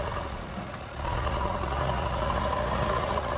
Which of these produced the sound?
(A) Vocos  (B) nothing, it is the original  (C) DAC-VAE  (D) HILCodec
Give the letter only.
A